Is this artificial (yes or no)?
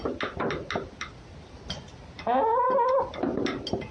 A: no